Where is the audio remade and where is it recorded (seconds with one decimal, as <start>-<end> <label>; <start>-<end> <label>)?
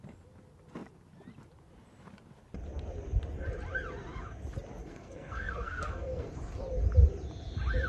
0.0-4.8 recorded; 4.8-6.3 remade; 6.3-7.9 recorded